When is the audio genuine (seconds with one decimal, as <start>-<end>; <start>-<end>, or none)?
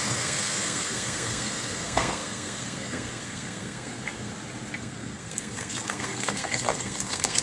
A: 4.3-4.8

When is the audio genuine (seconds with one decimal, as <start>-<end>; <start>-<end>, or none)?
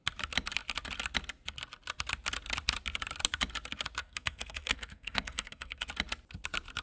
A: 0.0-4.0; 5.9-6.8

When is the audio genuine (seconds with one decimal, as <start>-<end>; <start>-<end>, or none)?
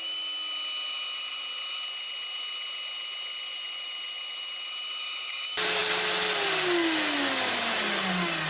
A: 0.0-8.5